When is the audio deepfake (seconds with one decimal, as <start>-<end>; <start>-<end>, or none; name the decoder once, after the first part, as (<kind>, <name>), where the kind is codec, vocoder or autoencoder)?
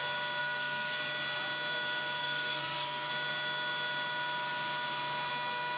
0.4-1.0 (codec, SNAC); 2.2-3.1